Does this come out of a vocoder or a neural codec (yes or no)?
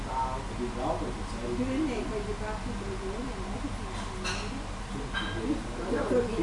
no